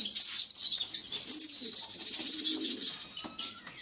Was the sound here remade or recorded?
recorded